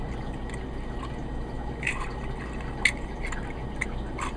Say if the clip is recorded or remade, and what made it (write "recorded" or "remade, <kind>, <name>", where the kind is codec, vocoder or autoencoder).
recorded